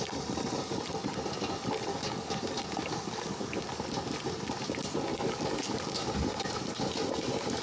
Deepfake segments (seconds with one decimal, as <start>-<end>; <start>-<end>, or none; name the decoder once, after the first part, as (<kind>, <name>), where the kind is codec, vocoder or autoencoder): 1.9-2.4 (codec, DAC); 2.8-3.6; 5.1-6.1